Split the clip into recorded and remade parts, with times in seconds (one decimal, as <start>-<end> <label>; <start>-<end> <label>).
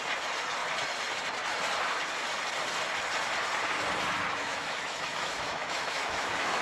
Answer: 0.0-4.4 recorded; 4.4-6.6 remade